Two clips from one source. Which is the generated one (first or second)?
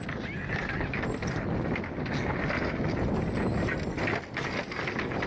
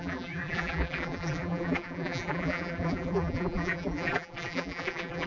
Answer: second